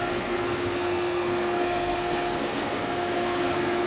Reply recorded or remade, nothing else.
remade